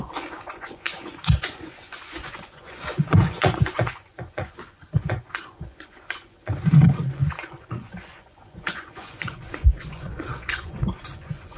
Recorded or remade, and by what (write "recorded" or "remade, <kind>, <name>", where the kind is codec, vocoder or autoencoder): remade, vocoder, Vocos